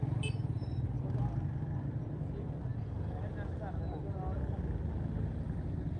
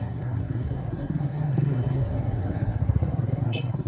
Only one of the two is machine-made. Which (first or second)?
second